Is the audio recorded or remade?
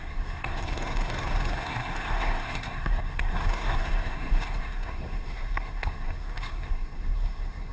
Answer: remade